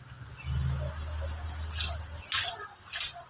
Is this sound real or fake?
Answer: real